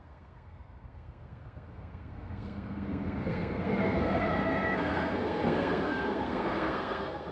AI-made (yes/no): yes